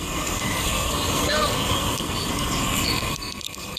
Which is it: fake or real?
fake